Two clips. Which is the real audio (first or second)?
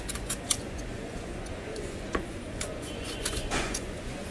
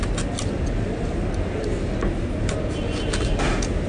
second